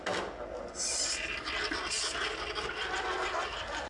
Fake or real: real